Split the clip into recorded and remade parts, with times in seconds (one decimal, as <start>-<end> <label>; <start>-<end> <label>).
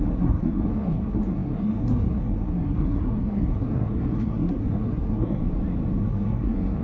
0.0-5.4 remade; 5.4-6.0 recorded; 6.0-6.8 remade